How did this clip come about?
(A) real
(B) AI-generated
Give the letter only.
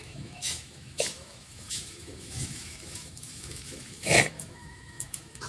B